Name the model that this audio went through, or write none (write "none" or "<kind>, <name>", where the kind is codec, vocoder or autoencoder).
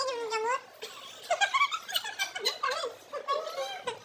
none